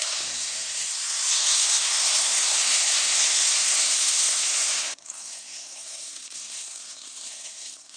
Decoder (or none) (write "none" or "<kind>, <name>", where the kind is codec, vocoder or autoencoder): codec, SNAC